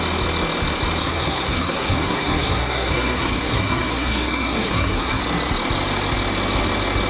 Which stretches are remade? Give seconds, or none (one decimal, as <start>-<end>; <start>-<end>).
1.0-5.2